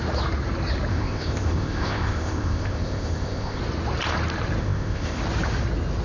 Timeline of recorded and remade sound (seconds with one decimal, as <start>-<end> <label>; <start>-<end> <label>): 0.0-0.9 recorded; 0.9-3.6 remade; 3.6-4.6 recorded; 4.6-5.2 remade; 5.2-6.0 recorded